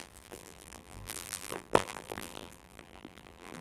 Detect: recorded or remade remade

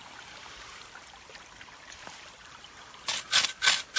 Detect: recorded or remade remade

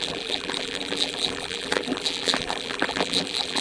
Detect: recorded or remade remade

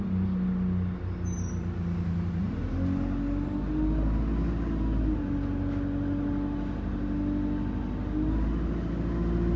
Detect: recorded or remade recorded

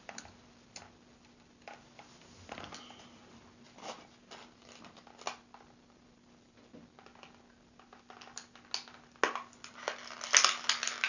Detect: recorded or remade recorded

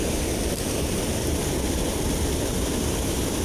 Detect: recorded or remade remade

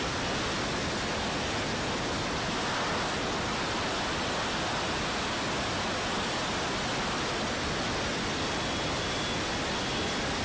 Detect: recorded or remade recorded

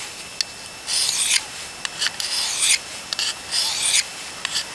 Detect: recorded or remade recorded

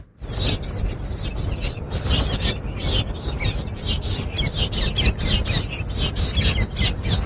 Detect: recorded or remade recorded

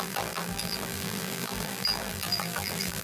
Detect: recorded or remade remade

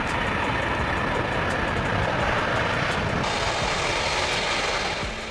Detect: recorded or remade recorded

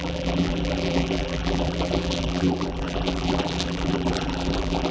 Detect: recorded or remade remade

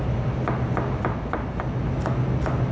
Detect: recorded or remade recorded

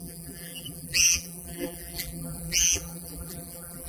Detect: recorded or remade remade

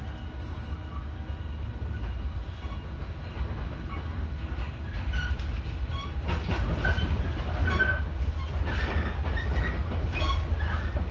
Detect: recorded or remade recorded